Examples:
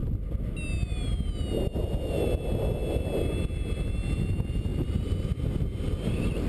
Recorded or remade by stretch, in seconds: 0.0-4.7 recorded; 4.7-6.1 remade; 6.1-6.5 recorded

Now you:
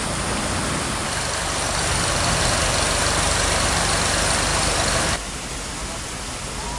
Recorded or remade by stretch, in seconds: 0.0-6.8 recorded

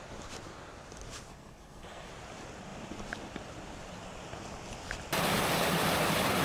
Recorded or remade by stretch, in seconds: 0.0-1.3 recorded; 1.3-2.1 remade; 2.1-6.4 recorded